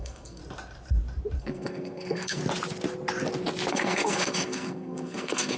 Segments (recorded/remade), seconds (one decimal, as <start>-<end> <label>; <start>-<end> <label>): 0.0-0.4 remade; 0.4-1.4 recorded; 1.4-2.4 remade; 2.4-3.7 recorded; 3.7-5.6 remade